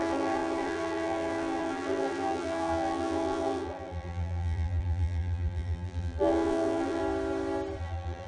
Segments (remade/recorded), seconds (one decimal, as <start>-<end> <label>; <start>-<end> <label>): 0.0-7.0 remade; 7.0-7.8 recorded; 7.8-8.3 remade